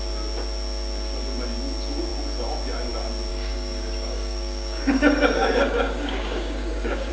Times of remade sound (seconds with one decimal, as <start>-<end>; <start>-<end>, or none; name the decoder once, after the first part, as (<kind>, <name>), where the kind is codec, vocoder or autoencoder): 3.3-7.1 (codec, DAC)